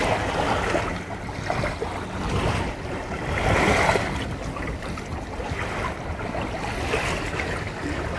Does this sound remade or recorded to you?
recorded